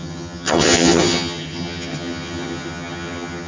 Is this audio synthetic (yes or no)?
yes